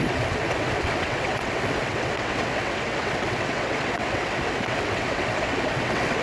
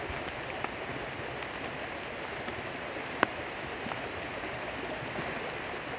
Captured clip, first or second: second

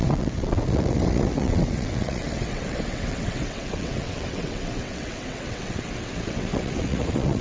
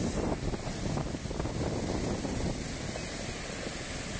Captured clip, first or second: second